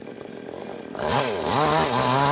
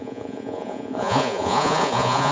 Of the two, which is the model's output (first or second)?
second